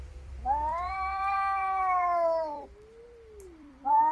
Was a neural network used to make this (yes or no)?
yes